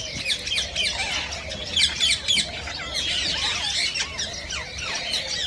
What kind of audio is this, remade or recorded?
recorded